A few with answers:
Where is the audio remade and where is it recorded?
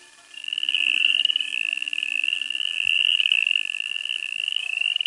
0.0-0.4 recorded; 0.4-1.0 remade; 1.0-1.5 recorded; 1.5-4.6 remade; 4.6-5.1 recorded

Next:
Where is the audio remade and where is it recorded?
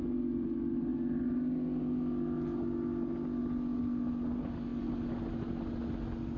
0.0-6.4 recorded